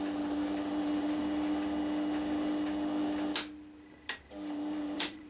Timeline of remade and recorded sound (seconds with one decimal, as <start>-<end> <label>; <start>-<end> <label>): 0.0-1.2 remade; 1.2-4.2 recorded; 4.2-5.3 remade